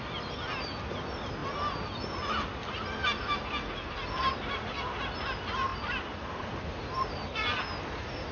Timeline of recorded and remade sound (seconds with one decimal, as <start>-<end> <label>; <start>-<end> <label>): 0.0-5.7 recorded; 5.7-7.0 remade; 7.0-8.3 recorded